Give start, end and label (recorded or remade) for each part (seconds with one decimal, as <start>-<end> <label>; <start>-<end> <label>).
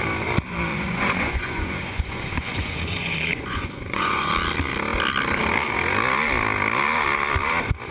0.0-0.7 recorded; 0.7-4.3 remade; 4.3-7.9 recorded